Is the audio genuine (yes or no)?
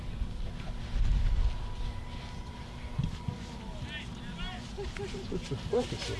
yes